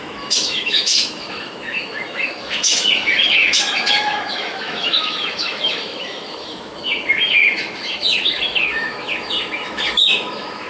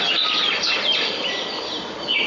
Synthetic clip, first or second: first